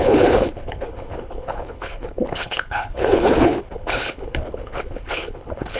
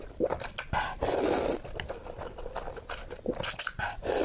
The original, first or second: second